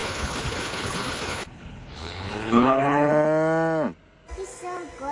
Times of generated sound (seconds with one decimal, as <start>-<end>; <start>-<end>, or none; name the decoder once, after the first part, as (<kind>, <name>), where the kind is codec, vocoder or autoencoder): 0.0-3.1 (codec, HILCodec)